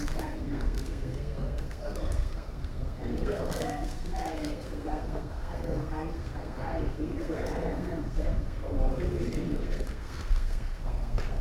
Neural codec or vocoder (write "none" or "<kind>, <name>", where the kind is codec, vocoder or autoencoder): codec, SNAC